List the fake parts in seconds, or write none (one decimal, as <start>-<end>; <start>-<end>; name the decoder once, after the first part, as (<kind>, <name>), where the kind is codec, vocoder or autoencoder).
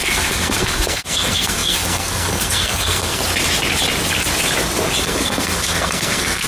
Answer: 0.0-3.2 (codec, SNAC); 5.0-6.5